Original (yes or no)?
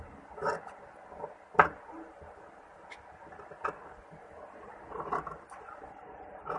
yes